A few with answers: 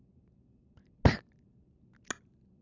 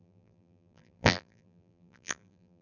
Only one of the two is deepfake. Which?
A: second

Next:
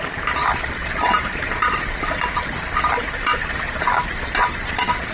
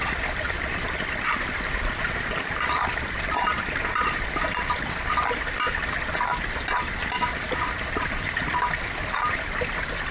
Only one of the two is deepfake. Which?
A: second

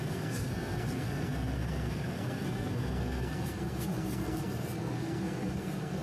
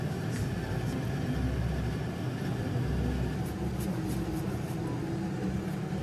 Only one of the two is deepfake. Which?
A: first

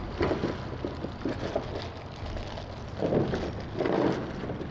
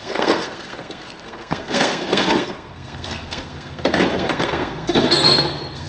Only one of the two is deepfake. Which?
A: second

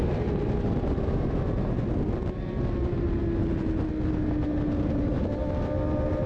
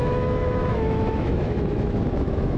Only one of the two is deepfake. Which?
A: second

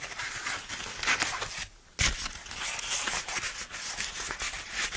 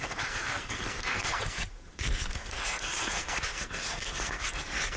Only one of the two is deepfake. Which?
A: second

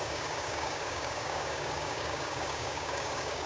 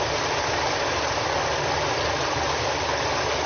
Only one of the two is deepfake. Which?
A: first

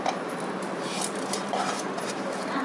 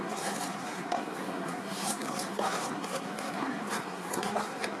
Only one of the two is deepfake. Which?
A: second